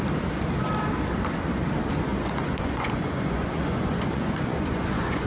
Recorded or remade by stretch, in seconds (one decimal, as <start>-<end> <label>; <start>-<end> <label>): 0.0-2.1 recorded; 2.1-5.3 remade